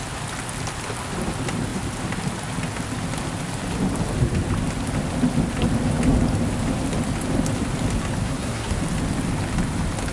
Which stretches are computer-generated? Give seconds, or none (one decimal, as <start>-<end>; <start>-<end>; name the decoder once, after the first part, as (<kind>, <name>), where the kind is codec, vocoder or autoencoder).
8.2-8.8 (codec, SNAC)

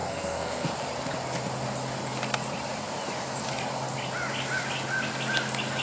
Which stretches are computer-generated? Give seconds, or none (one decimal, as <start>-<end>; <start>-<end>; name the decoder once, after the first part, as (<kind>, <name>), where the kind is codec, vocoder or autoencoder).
0.0-0.7 (codec, SNAC)

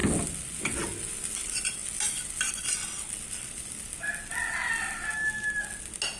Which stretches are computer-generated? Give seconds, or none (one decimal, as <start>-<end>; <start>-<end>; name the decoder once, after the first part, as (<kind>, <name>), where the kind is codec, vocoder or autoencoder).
none

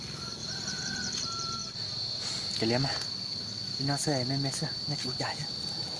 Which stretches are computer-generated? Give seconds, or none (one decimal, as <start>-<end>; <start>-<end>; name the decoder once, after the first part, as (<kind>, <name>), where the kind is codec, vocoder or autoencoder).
none

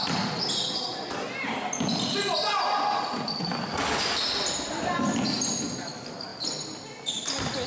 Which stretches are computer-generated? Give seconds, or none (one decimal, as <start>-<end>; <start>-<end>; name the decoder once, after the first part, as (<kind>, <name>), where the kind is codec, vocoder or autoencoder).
none